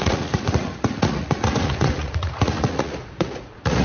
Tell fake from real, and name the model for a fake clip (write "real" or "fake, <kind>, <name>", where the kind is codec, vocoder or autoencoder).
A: fake, vocoder, Vocos